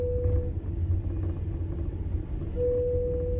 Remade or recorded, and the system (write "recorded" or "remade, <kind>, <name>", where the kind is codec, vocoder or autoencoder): recorded